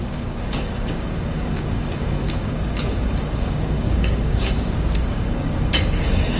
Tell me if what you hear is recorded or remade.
remade